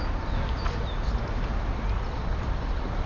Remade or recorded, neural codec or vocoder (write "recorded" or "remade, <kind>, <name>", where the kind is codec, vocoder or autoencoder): recorded